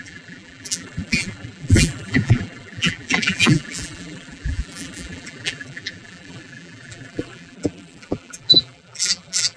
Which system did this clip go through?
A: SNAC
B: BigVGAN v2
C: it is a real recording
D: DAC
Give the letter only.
B